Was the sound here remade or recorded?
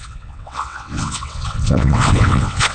remade